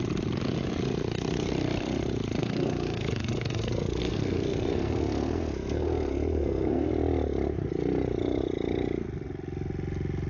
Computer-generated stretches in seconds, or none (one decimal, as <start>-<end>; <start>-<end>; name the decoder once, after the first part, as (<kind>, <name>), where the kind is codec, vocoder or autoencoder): 2.4-6.9 (codec, SNAC)